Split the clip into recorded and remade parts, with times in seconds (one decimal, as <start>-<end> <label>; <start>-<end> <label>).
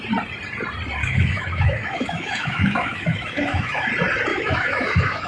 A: 0.0-1.0 recorded; 1.0-3.9 remade; 3.9-4.3 recorded; 4.3-5.3 remade